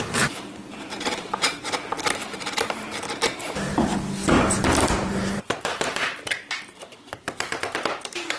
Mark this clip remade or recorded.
remade